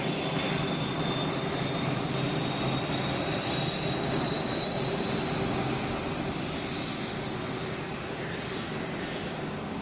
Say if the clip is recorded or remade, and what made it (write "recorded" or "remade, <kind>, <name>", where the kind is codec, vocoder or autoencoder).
recorded